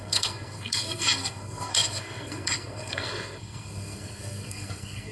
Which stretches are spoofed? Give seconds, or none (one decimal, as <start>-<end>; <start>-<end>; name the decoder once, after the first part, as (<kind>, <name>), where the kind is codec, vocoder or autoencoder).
0.0-5.1 (codec, SNAC)